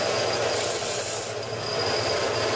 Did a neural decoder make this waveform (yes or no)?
no